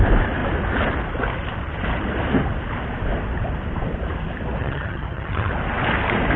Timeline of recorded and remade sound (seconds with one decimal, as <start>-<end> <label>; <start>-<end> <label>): 0.0-4.6 recorded; 4.6-5.5 remade; 5.5-6.4 recorded